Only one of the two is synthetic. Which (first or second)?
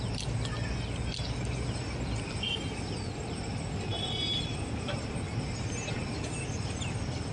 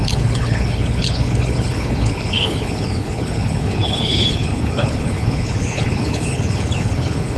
second